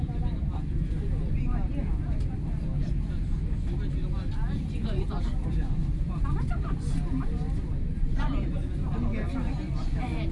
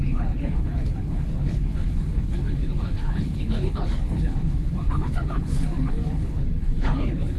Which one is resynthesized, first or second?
second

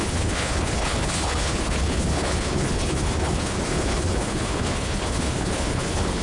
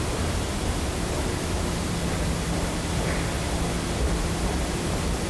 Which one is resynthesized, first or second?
first